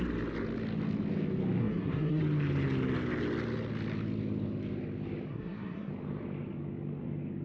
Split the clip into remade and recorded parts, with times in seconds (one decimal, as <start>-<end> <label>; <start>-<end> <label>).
0.0-1.6 recorded; 1.6-2.2 remade; 2.2-5.3 recorded; 5.3-5.9 remade; 5.9-7.4 recorded